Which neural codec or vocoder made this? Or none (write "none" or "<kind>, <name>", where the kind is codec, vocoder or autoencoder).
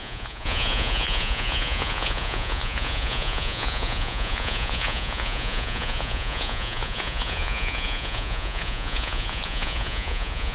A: vocoder, Vocos